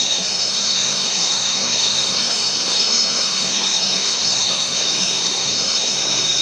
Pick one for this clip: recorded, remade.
remade